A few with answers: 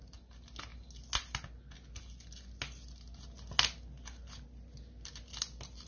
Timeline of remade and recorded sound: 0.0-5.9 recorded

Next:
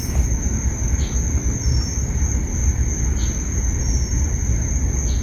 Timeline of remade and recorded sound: 0.0-5.2 recorded

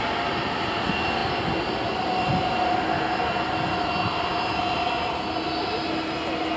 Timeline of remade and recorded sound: 0.0-6.6 recorded

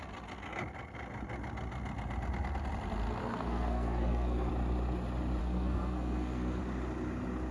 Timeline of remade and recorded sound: 0.0-3.2 recorded; 3.2-4.5 remade; 4.5-5.4 recorded; 5.4-6.6 remade; 6.6-7.5 recorded

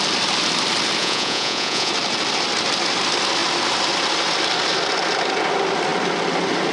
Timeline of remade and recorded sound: 0.0-1.0 recorded; 1.0-1.9 remade; 1.9-6.7 recorded

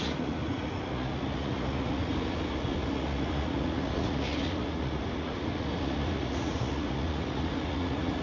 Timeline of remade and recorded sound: 0.0-8.2 remade

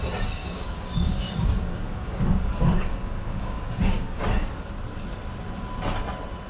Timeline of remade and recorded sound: 0.0-0.4 recorded; 0.4-4.2 remade; 4.2-6.5 recorded

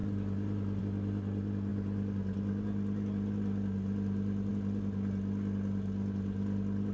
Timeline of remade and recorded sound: 0.0-6.9 recorded